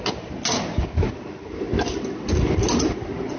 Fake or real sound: real